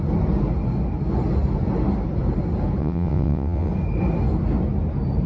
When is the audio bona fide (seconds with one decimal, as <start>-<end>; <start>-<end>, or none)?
0.0-2.8; 3.7-5.3